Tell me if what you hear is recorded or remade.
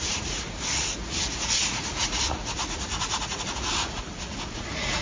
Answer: remade